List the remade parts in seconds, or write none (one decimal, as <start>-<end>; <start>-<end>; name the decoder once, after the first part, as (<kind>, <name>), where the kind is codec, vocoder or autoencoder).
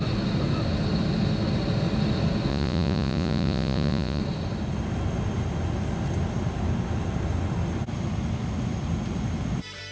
2.5-4.2 (vocoder, Vocos)